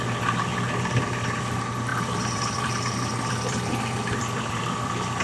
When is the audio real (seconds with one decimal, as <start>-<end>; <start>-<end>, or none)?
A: 0.5-1.4